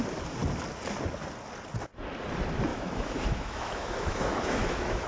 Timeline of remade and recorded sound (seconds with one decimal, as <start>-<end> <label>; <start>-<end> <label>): 0.0-2.7 recorded; 2.7-5.1 remade